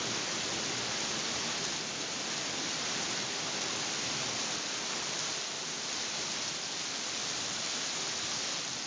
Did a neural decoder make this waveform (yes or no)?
no